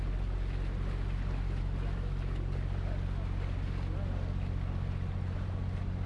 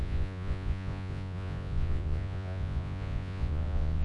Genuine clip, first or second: first